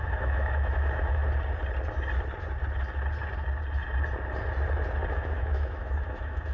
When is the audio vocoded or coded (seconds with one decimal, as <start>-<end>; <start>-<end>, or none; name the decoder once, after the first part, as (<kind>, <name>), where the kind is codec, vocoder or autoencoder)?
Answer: 0.0-1.2 (autoencoder, DAC-VAE); 5.1-6.5

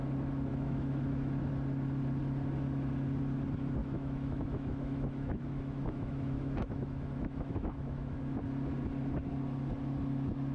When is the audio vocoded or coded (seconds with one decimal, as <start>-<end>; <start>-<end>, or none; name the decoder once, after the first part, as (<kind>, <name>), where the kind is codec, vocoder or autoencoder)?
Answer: 0.5-1.5 (autoencoder, DAC-VAE); 3.8-8.2

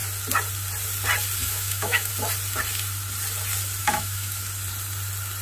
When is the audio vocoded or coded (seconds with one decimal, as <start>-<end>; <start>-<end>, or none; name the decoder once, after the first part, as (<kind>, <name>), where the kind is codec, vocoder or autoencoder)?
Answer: 1.4-2.1 (autoencoder, DAC-VAE); 3.8-4.4

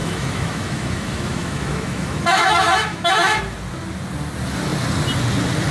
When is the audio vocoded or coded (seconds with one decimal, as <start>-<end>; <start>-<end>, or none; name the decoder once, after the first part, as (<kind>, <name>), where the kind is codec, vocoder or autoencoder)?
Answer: 0.0-3.4 (autoencoder, DAC-VAE)

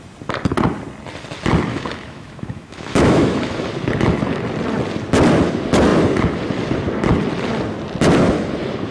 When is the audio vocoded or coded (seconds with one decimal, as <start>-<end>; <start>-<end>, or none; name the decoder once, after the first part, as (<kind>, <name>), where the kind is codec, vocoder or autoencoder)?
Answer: 1.7-3.5 (autoencoder, DAC-VAE)

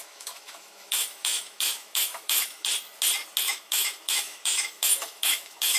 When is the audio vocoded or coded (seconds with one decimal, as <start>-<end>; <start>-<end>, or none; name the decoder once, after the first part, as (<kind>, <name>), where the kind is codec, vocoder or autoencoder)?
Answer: 0.0-2.7 (autoencoder, DAC-VAE); 3.4-5.8